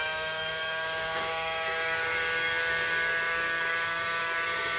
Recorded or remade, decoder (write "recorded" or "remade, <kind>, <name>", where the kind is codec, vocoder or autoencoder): remade, codec, DAC